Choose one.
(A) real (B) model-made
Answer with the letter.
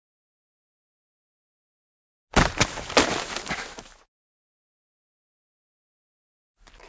A